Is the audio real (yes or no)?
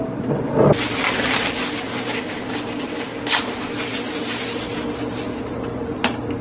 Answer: yes